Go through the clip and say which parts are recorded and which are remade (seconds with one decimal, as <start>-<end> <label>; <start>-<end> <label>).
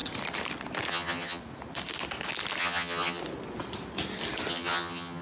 0.0-0.9 recorded; 0.9-1.4 remade; 1.4-2.6 recorded; 2.6-3.2 remade; 3.2-4.5 recorded; 4.5-5.2 remade